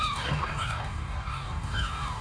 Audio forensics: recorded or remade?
remade